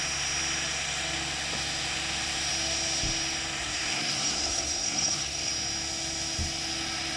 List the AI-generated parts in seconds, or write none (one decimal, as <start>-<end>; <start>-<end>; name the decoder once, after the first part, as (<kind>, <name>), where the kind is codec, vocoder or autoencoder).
3.6-5.5 (codec, SNAC)